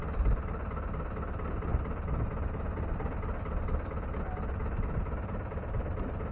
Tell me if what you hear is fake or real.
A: real